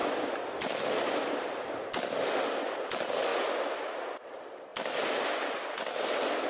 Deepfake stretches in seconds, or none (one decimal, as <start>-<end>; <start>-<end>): 2.4-3.3; 4.2-4.7; 5.7-6.5